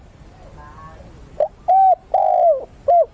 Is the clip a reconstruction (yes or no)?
no